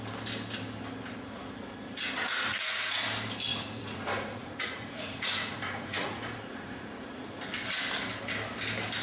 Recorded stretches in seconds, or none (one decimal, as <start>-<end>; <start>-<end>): 0.0-2.5; 3.0-3.5; 7.4-9.0